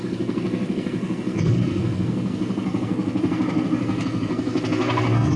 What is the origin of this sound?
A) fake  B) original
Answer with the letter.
A